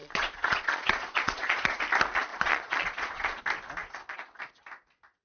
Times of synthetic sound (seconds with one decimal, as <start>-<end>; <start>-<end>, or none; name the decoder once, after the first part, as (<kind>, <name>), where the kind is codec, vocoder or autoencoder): 0.0-1.8 (vocoder, Vocos); 2.3-3.4; 3.8-4.4